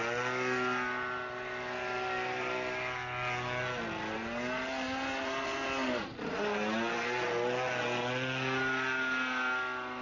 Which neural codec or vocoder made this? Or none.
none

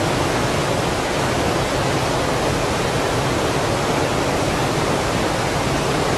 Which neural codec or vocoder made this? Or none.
none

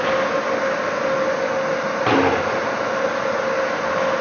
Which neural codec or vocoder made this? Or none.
none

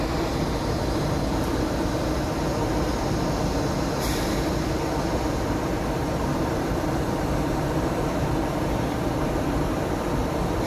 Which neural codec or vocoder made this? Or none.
vocoder, BigVGAN v2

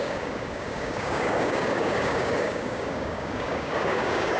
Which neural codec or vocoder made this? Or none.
codec, DAC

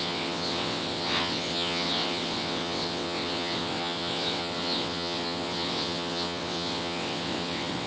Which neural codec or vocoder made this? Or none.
vocoder, WaveNeXt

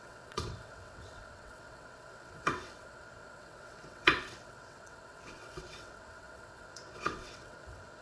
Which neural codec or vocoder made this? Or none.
vocoder, WaveNeXt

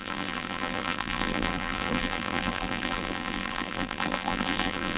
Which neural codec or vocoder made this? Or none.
vocoder, BigVGAN v2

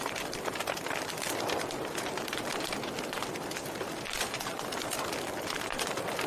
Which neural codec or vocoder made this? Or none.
vocoder, BigVGAN v2